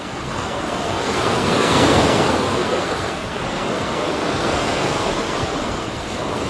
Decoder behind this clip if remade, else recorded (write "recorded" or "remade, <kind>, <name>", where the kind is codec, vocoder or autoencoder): remade, codec, SNAC